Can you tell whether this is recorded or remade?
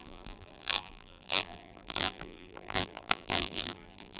remade